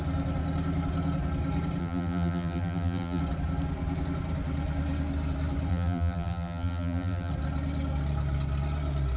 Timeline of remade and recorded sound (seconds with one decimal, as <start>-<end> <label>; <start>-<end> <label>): 0.0-1.8 recorded; 1.8-3.2 remade; 3.2-5.7 recorded; 5.7-7.3 remade; 7.3-9.2 recorded